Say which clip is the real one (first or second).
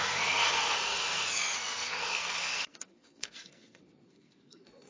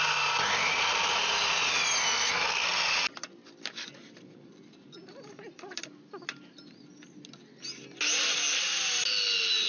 second